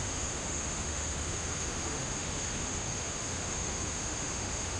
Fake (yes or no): yes